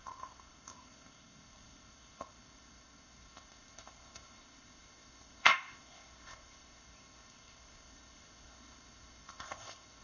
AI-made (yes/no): yes